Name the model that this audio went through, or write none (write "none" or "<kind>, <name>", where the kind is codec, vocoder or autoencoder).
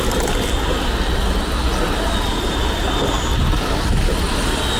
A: none